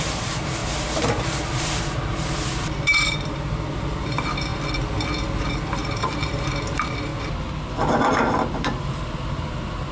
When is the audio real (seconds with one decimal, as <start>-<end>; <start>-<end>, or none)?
4.5-5.4; 7.1-8.8